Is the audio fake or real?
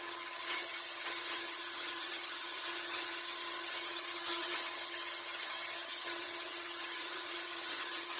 fake